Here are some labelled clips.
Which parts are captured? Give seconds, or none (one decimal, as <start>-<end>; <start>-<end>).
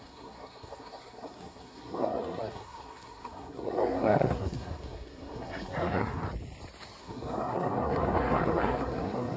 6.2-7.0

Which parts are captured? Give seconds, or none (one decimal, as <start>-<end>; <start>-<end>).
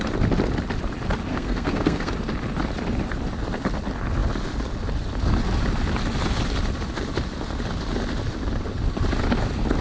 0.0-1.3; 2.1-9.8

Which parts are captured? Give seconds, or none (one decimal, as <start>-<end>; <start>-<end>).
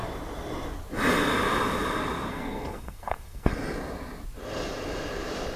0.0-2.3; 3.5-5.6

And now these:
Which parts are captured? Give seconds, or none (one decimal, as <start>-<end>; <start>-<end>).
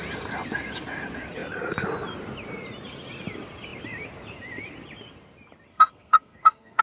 0.0-5.7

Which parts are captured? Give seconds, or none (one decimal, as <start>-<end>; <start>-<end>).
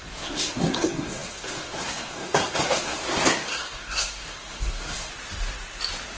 5.1-6.2